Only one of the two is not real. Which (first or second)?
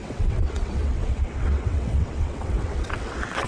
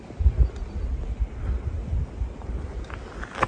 first